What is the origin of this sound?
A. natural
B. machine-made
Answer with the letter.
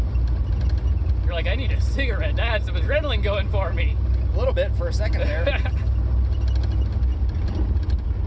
A